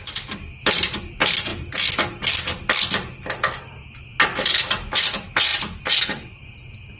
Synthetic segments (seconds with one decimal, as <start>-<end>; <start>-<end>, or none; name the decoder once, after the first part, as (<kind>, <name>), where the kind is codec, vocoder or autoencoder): 5.5-6.4 (vocoder, BigVGAN v2)